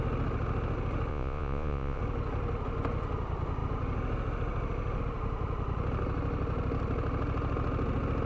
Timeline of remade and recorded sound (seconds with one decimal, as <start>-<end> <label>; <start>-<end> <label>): 0.0-1.1 recorded; 1.1-2.0 remade; 2.0-8.3 recorded